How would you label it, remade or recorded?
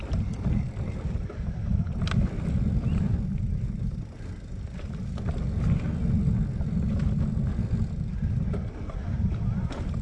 recorded